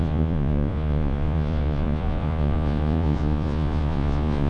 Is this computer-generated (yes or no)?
yes